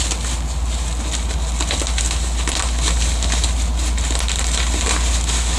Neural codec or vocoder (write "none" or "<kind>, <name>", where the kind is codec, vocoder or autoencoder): none